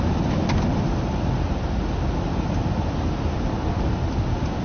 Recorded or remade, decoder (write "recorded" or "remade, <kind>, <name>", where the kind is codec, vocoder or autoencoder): recorded